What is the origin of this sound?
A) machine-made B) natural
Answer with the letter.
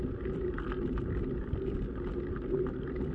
B